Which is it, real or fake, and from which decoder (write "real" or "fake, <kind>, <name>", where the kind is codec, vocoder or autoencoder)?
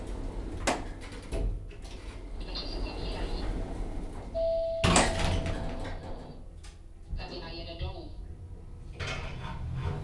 real